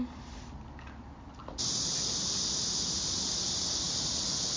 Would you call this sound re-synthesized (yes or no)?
no